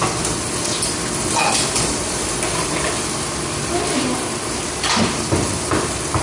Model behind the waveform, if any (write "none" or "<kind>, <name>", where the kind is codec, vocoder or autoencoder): none